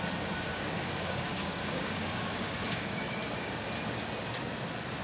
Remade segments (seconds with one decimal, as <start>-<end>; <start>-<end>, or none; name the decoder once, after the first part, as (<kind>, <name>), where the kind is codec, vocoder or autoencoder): 0.5-3.5 (codec, DAC)